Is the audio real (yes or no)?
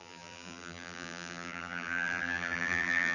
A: no